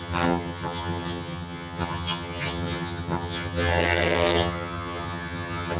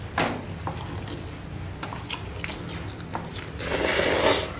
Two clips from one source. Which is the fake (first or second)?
first